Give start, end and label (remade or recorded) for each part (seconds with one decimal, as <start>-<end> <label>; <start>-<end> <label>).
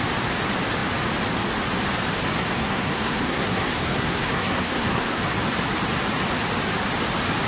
0.0-2.6 recorded; 2.6-5.2 remade; 5.2-7.5 recorded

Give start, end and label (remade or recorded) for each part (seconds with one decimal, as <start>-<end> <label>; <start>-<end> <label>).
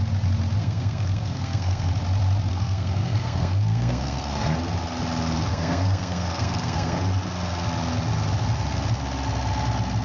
0.0-0.6 recorded; 0.6-1.9 remade; 1.9-2.5 recorded; 2.5-4.5 remade; 4.5-5.5 recorded; 5.5-7.0 remade; 7.0-10.0 recorded